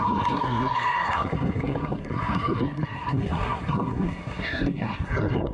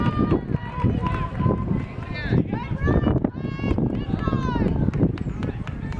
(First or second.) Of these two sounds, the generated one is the first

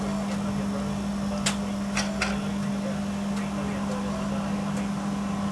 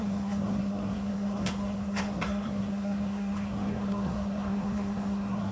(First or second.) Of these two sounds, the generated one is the second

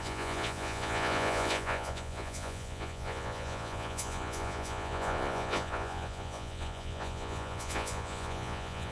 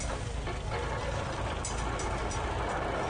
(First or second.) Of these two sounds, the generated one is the first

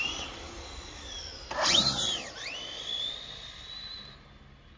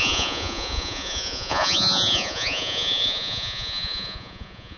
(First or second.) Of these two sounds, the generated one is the second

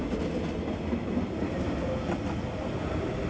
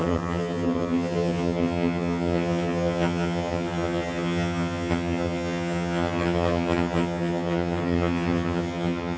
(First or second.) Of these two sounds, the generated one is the second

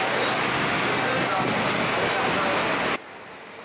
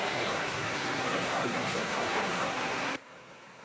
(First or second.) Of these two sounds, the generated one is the second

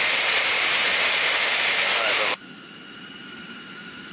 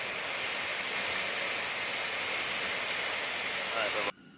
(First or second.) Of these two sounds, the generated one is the first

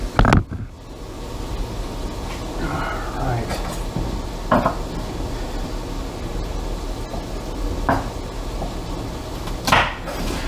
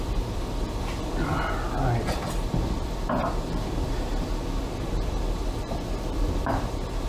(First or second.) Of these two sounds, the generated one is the second